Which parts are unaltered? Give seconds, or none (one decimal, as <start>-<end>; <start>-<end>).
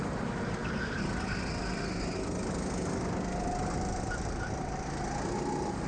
0.0-5.9